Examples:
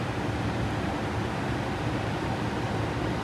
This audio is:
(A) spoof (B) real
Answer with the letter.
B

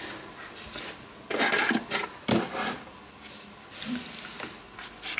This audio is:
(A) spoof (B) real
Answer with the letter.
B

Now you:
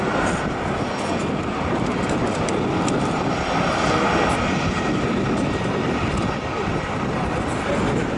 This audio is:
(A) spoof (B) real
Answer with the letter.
B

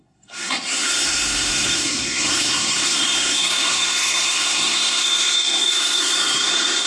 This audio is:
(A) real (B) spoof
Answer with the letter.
B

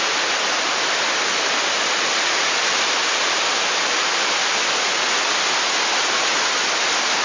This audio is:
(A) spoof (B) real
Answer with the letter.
B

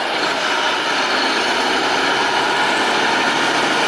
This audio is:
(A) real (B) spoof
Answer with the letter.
A